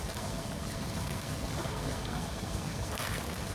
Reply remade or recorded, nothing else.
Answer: remade